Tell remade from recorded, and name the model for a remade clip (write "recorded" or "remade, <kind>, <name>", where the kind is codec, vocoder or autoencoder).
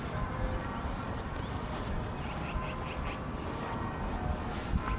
recorded